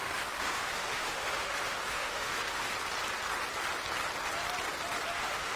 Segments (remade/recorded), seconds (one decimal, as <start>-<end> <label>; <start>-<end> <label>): 0.0-2.7 remade; 2.7-5.1 recorded; 5.1-5.6 remade